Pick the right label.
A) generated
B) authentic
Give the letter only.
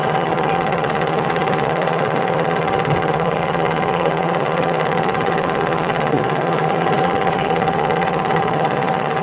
A